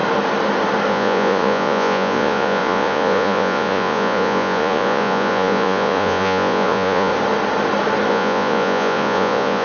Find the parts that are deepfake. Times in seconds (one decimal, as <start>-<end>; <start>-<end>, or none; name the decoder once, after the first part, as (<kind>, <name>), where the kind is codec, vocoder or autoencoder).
0.9-7.1 (vocoder, Vocos); 8.1-9.6